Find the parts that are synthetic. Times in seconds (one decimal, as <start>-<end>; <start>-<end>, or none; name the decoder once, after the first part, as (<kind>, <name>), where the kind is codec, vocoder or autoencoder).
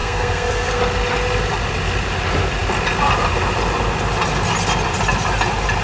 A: 0.0-0.8 (codec, SNAC)